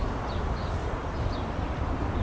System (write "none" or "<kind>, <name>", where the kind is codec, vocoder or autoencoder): none